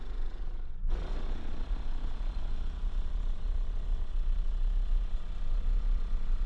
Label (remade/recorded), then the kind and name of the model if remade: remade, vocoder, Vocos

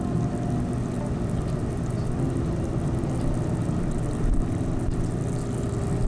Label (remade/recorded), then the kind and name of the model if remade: recorded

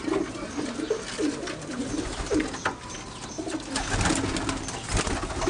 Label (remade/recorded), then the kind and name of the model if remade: recorded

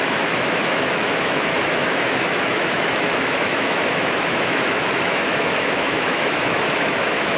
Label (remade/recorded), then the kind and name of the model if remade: remade, autoencoder, DAC-VAE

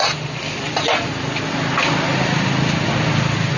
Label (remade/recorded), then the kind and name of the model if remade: recorded